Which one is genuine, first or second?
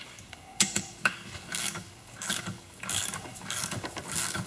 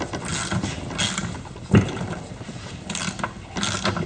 second